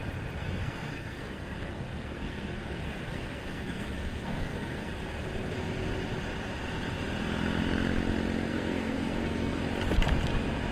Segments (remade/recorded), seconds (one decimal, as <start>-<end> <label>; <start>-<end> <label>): 0.0-0.4 recorded; 0.4-4.9 remade; 4.9-8.5 recorded; 8.5-9.6 remade; 9.6-10.7 recorded